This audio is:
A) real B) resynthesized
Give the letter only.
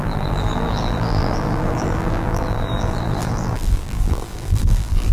B